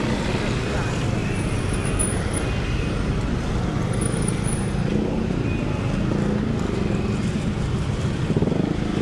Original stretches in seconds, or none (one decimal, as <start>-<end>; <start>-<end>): 0.0-9.0